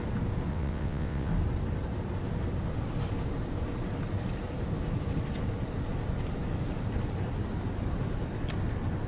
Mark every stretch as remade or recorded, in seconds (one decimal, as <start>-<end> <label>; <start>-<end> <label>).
0.0-0.5 recorded; 0.5-1.3 remade; 1.3-9.1 recorded